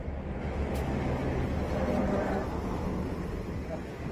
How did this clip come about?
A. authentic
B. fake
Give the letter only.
A